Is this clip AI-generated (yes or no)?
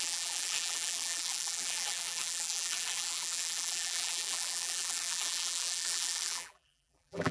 yes